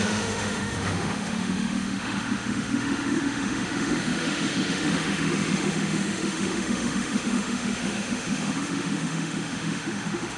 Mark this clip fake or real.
fake